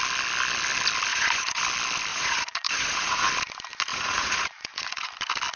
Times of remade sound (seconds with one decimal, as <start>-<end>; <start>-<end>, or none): 1.1-1.6; 2.1-3.3; 3.9-5.1